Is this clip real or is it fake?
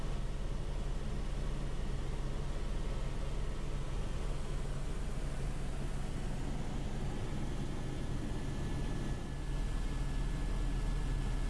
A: real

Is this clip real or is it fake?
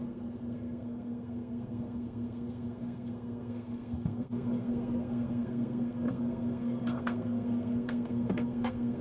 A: fake